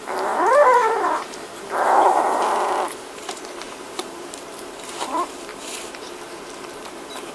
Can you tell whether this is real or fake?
fake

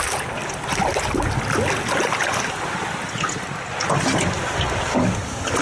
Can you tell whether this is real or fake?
real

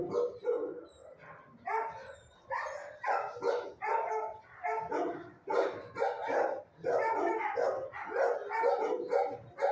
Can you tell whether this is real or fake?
real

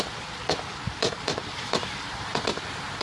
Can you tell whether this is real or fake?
fake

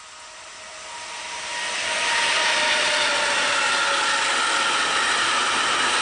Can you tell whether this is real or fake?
real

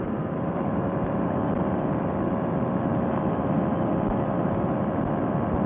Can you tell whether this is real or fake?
fake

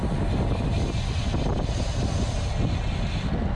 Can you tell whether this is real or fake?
real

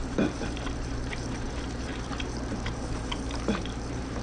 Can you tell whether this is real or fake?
fake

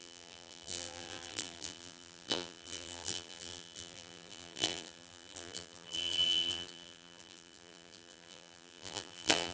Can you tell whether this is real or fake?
fake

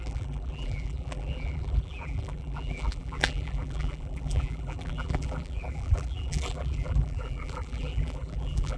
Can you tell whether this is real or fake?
fake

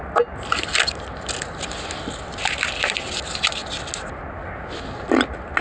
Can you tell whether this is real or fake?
real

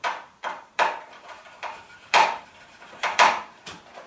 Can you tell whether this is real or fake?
fake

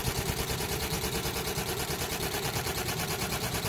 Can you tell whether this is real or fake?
fake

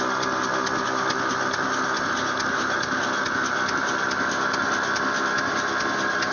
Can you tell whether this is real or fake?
real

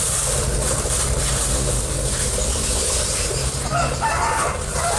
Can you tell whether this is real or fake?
fake